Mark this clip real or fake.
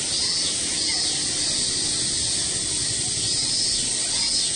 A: real